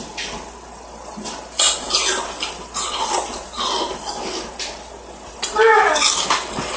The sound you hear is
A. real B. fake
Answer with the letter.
A